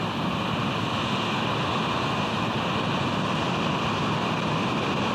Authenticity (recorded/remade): recorded